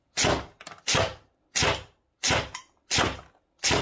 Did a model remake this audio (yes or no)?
no